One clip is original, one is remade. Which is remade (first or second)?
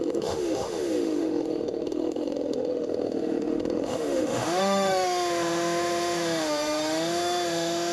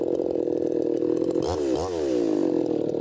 first